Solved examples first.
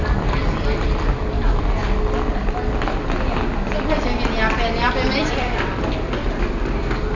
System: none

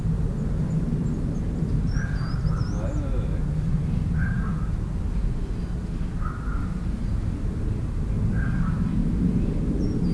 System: none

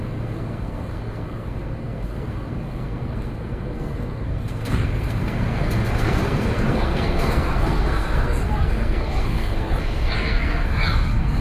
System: codec, SNAC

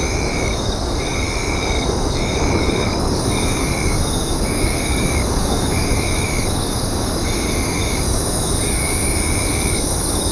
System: codec, DAC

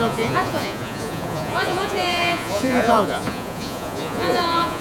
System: vocoder, Vocos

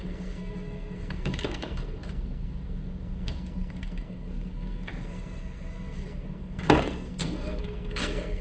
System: codec, SNAC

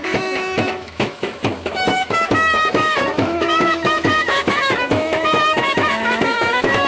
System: autoencoder, DAC-VAE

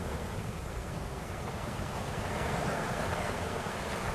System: codec, SNAC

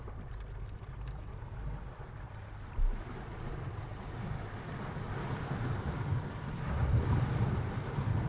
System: vocoder, BigVGAN v2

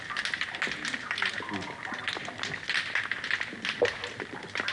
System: none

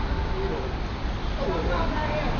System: none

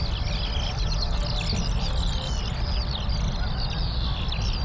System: none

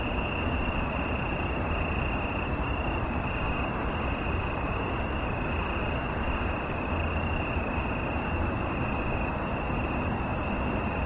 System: none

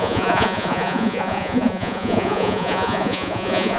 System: vocoder, Vocos